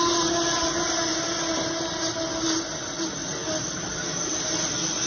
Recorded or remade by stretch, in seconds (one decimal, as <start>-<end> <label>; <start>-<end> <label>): 0.0-5.1 recorded